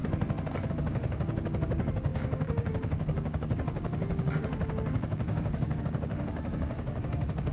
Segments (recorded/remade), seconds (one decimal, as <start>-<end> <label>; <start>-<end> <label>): 0.0-0.7 recorded; 0.7-7.5 remade

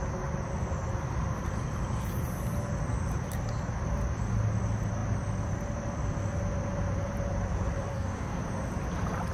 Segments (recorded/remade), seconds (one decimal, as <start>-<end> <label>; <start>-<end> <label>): 0.0-7.9 recorded; 7.9-8.4 remade; 8.4-9.3 recorded

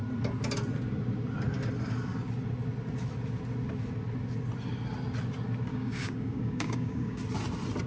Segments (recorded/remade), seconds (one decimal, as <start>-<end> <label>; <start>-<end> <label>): 0.0-5.7 recorded; 5.7-7.2 remade; 7.2-7.9 recorded

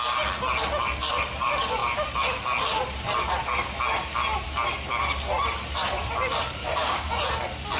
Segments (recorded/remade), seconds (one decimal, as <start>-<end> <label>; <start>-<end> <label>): 0.0-6.6 recorded; 6.6-7.2 remade; 7.2-7.8 recorded

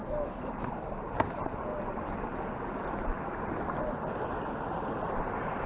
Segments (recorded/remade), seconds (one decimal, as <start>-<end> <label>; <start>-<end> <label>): 0.0-0.7 remade; 0.7-5.7 recorded

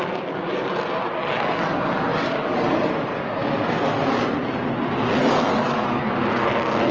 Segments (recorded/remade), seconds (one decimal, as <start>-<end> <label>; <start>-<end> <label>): 0.0-1.2 recorded; 1.2-2.7 remade; 2.7-5.2 recorded; 5.2-6.0 remade; 6.0-6.9 recorded

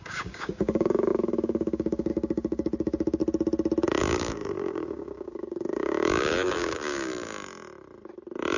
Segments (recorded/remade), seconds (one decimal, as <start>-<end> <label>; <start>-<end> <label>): 0.0-3.2 remade; 3.2-4.0 recorded; 4.0-7.1 remade; 7.1-8.6 recorded